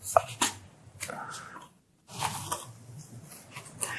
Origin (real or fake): real